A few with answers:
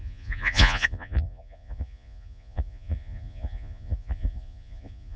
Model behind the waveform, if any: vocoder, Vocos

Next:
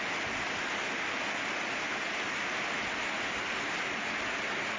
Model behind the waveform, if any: none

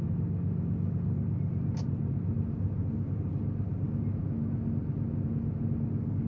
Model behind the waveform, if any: none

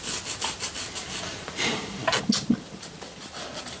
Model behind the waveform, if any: none